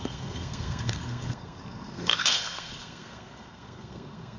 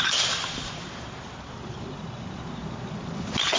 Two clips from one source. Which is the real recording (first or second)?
second